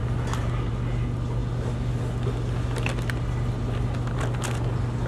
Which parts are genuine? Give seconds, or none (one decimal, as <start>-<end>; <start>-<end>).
0.0-5.1